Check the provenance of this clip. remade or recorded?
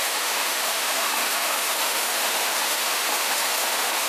remade